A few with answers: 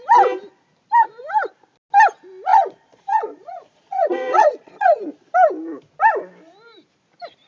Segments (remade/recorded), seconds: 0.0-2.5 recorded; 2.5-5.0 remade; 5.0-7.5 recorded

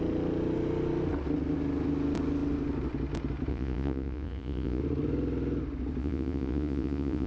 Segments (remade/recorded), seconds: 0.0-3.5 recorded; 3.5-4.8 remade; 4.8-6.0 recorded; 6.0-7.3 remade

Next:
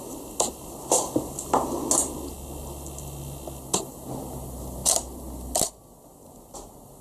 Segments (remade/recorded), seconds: 0.0-7.0 recorded